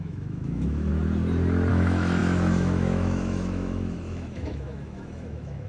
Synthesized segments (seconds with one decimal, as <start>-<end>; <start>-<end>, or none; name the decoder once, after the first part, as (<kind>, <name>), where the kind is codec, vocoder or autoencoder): 0.0-0.9 (autoencoder, DAC-VAE); 1.7-5.7